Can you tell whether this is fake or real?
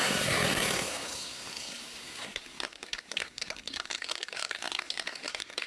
fake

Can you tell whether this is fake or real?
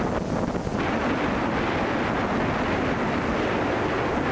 real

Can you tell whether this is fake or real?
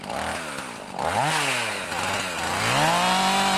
real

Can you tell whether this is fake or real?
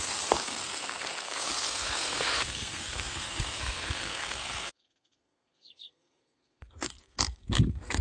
fake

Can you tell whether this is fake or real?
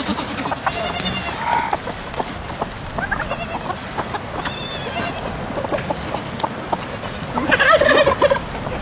real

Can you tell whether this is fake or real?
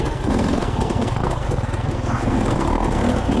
fake